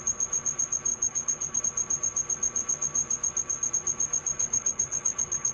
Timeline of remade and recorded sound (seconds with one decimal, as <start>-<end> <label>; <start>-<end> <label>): 0.0-0.9 recorded; 0.9-1.6 remade; 1.6-4.4 recorded; 4.4-5.5 remade